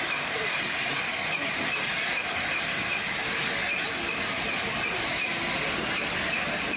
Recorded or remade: recorded